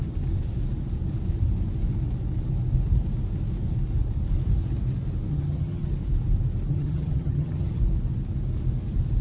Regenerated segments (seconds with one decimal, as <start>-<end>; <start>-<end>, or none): 5.3-5.9; 6.7-7.8